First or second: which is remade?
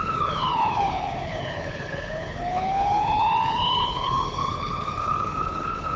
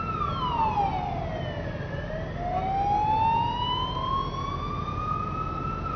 first